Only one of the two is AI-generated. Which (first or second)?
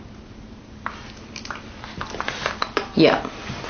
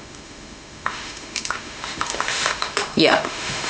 second